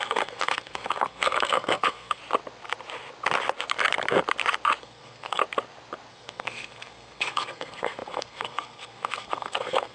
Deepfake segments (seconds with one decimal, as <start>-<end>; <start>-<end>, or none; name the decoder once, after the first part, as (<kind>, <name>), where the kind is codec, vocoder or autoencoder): 0.0-2.2 (codec, SNAC); 4.8-5.4; 6.1-9.9